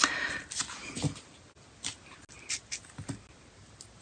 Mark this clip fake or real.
real